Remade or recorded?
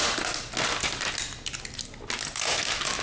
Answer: recorded